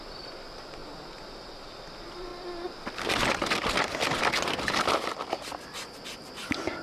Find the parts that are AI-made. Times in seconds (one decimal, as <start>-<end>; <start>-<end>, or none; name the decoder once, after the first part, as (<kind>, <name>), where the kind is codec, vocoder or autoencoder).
0.0-0.8 (vocoder, BigVGAN v2); 1.4-2.3; 4.2-6.8